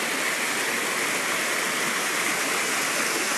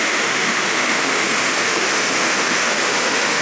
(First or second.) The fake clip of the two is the second